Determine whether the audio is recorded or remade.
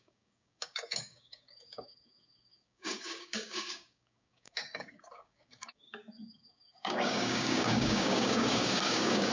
remade